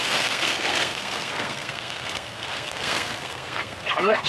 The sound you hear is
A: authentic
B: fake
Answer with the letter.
B